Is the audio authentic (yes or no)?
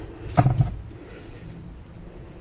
yes